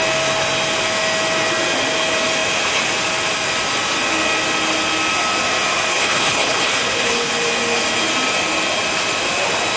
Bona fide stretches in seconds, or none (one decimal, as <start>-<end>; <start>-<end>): 0.0-5.9; 7.3-9.8